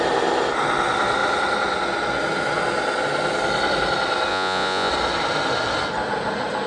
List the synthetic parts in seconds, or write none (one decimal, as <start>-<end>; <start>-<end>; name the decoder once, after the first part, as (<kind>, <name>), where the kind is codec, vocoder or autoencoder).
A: 4.3-4.9 (vocoder, Vocos)